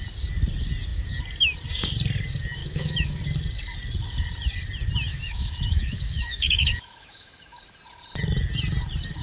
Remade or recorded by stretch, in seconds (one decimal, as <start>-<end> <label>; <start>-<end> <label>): 0.0-2.6 recorded; 2.6-3.2 remade; 3.2-5.1 recorded; 5.1-7.6 remade; 7.6-9.2 recorded

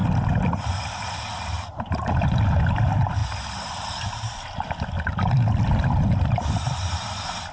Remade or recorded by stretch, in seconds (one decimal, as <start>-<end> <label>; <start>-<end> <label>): 0.0-7.5 recorded

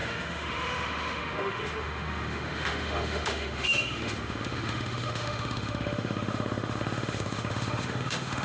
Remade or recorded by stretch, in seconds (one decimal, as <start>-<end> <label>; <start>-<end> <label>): 0.0-8.4 remade

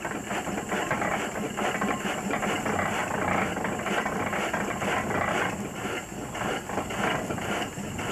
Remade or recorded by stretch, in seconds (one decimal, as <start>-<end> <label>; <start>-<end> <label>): 0.0-8.1 recorded

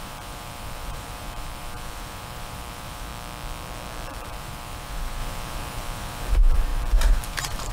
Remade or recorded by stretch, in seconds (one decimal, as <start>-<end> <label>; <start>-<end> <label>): 0.0-3.1 remade; 3.1-4.1 recorded; 4.1-7.7 remade